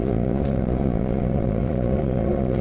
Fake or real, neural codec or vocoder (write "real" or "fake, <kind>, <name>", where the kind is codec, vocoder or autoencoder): fake, vocoder, Vocos